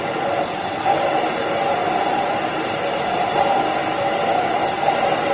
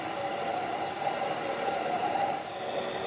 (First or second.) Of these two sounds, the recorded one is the first